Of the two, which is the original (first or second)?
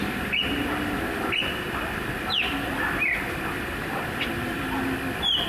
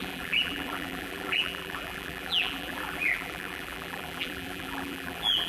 first